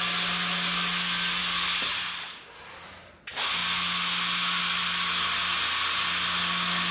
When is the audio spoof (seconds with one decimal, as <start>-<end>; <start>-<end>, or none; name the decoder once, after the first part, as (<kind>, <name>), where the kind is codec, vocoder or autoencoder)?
1.4-1.9 (vocoder, BigVGAN v2)